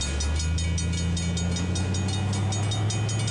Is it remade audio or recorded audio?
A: recorded